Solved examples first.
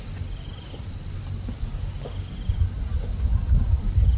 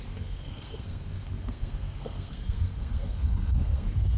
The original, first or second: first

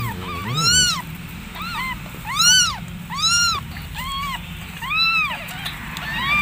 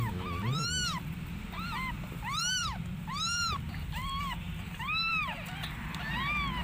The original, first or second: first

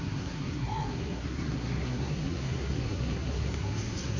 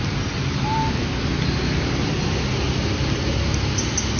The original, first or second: second